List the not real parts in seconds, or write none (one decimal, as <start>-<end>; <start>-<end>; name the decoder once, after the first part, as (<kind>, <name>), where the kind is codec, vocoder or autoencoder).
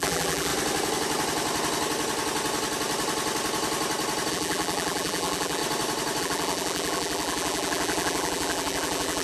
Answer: 0.0-0.5 (vocoder, BigVGAN v2); 4.3-5.6; 6.2-9.2